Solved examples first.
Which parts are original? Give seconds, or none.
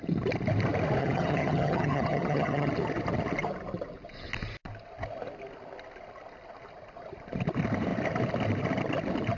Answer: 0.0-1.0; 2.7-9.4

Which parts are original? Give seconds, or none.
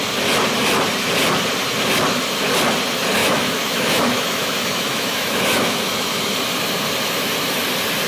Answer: 0.0-3.2; 6.3-8.1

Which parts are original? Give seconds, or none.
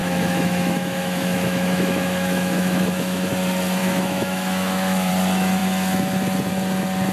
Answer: 3.3-3.8; 5.1-7.1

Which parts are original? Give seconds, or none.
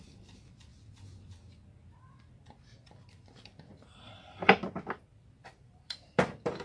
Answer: 0.7-2.0; 4.6-5.6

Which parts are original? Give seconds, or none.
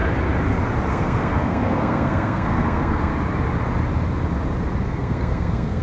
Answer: 0.0-0.9; 3.1-4.8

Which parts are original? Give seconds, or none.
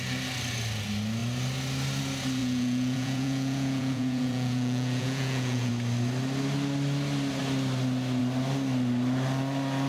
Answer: 0.0-2.4; 5.7-9.9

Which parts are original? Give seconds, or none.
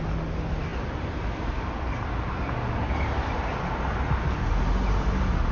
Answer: 0.0-5.5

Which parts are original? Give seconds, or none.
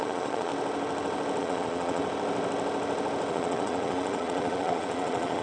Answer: 0.5-1.4; 2.0-3.3